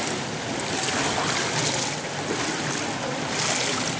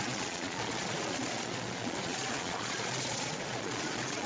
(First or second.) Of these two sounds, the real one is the first